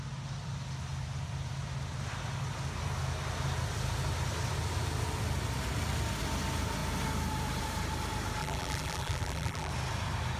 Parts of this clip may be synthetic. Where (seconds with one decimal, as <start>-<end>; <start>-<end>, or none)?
8.4-9.7